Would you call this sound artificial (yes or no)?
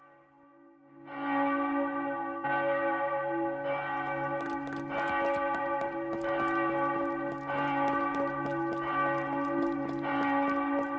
no